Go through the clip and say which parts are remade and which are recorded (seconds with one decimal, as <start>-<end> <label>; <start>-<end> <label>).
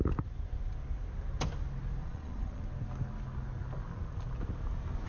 0.0-2.0 recorded; 2.0-2.6 remade; 2.6-5.1 recorded